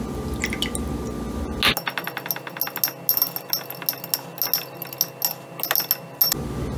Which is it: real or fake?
real